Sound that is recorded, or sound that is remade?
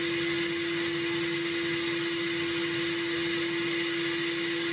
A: recorded